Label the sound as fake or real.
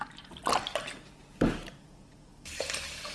fake